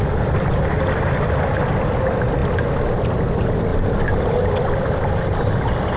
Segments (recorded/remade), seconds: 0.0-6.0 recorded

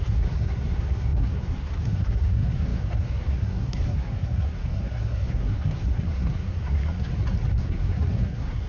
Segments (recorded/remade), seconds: 0.0-7.1 remade; 7.1-7.6 recorded; 7.6-8.7 remade

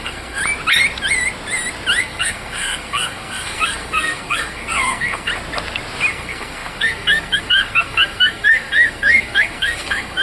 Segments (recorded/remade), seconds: 0.0-0.4 remade; 0.4-2.0 recorded; 2.0-5.3 remade; 5.3-6.1 recorded; 6.1-10.2 remade